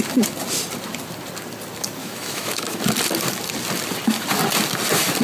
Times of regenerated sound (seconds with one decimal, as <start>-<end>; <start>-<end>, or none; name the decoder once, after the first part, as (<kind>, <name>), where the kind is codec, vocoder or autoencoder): 2.0-2.8 (autoencoder, DAC-VAE)